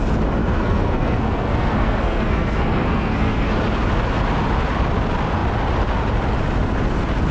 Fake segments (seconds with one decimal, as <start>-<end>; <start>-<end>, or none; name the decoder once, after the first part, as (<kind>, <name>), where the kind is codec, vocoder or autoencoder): 0.4-3.5 (codec, SNAC)